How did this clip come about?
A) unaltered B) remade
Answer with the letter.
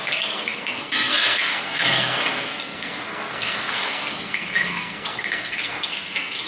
B